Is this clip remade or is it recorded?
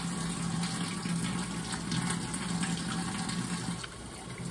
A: recorded